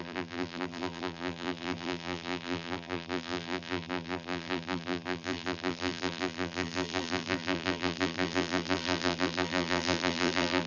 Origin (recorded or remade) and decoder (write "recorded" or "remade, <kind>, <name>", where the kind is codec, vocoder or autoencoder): remade, vocoder, BigVGAN v2